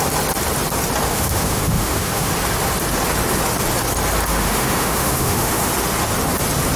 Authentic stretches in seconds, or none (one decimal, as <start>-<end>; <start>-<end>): 0.0-1.1; 2.3-4.3; 5.7-6.8